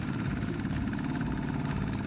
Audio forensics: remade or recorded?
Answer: remade